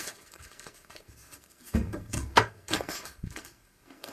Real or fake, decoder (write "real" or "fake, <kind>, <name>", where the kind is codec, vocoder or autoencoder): fake, codec, SNAC